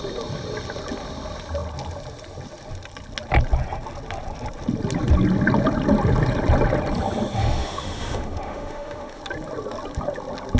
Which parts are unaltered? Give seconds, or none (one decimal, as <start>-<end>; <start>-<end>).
0.0-7.4; 9.2-10.6